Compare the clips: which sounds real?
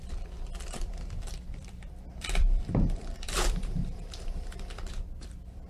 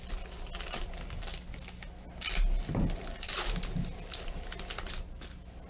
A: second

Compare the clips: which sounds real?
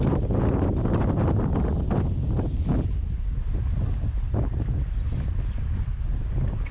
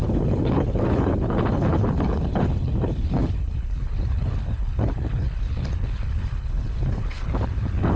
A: first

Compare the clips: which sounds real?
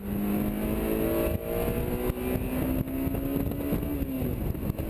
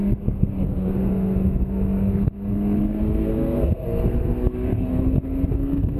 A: first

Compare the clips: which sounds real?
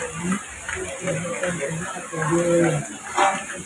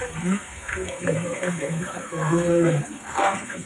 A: first